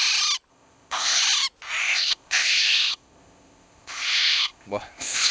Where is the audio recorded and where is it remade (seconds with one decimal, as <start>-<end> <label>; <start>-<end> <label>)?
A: 0.0-0.5 recorded; 0.5-1.2 remade; 1.2-1.8 recorded; 1.8-5.3 remade